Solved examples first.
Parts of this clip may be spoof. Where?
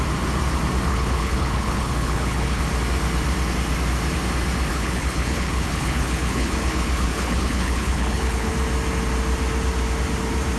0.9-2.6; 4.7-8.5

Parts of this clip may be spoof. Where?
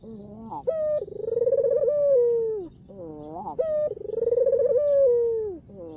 none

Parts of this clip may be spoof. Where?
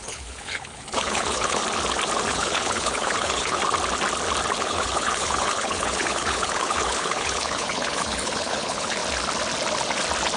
0.0-1.6; 2.3-3.6; 4.6-9.0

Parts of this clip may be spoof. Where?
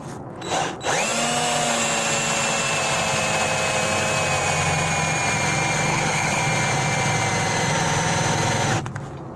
5.9-6.4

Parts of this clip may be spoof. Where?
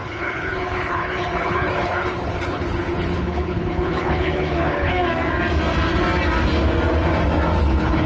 0.0-4.9; 7.6-8.1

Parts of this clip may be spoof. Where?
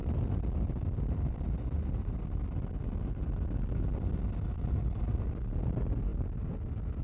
none